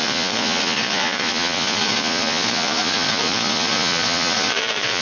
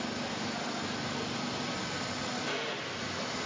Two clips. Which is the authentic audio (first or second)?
second